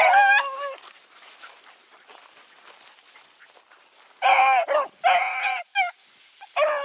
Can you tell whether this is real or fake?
real